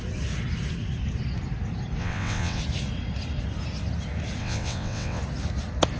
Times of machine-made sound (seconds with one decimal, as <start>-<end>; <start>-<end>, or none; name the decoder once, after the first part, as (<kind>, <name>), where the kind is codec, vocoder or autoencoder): 2.0-2.6 (vocoder, WaveNeXt); 4.4-5.2